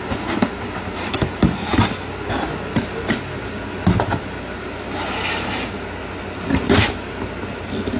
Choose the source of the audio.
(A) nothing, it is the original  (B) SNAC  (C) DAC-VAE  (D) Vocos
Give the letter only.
A